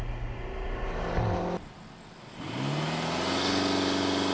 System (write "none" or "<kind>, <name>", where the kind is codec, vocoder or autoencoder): none